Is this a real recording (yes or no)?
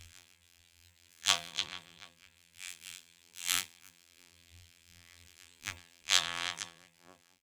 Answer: no